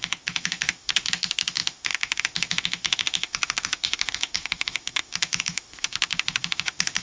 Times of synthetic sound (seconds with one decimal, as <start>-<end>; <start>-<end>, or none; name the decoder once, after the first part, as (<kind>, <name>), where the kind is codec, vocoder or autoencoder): 0.0-7.0 (autoencoder, DAC-VAE)